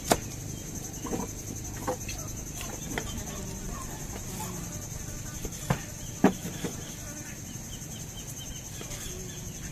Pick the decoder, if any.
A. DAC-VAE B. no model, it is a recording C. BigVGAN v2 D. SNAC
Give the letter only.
B